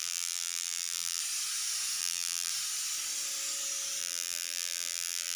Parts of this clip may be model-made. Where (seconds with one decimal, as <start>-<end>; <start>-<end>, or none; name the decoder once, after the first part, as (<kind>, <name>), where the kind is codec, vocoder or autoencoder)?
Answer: 0.0-1.2 (vocoder, BigVGAN v2); 2.0-2.5; 4.0-5.4